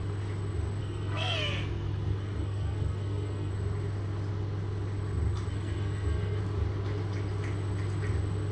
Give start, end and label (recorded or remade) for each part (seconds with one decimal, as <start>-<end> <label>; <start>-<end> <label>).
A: 0.0-0.8 recorded; 0.8-3.5 remade; 3.5-5.5 recorded; 5.5-6.4 remade; 6.4-8.5 recorded